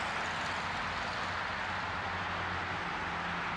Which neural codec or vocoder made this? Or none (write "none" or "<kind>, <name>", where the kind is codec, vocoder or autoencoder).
none